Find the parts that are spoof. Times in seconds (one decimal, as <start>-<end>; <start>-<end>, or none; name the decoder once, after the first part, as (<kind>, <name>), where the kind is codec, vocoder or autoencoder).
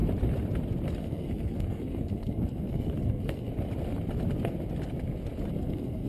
1.0-3.5 (codec, SNAC); 5.5-6.1